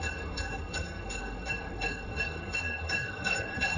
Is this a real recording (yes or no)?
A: no